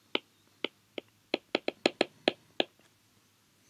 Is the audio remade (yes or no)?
no